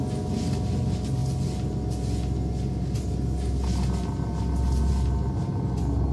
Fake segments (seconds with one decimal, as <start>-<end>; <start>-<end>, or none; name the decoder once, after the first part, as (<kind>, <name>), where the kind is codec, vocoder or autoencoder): none